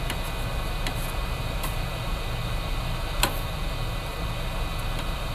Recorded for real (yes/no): yes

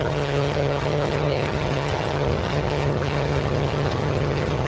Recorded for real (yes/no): no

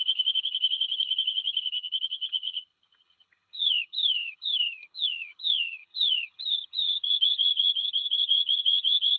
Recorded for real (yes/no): no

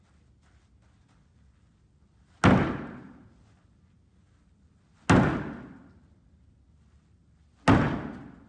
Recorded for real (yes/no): yes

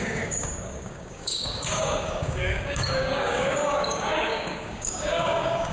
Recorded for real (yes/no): no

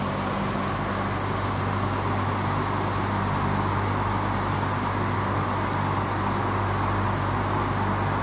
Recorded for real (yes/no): yes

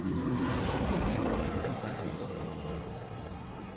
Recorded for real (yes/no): no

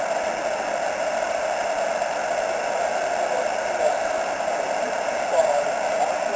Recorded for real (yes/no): yes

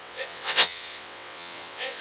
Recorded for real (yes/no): no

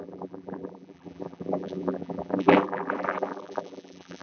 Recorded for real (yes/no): no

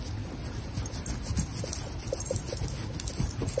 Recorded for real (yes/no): yes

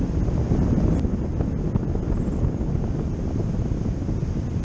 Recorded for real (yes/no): yes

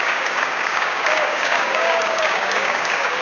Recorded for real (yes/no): no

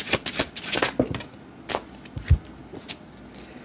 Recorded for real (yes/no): yes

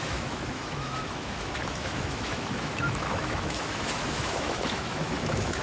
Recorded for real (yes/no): no